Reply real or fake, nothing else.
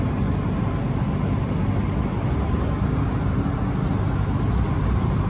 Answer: real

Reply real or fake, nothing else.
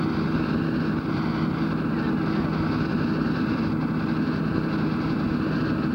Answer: real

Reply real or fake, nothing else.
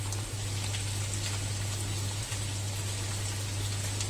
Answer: real